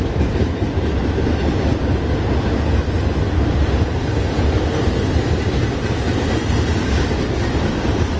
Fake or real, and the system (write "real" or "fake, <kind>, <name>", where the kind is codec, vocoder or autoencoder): real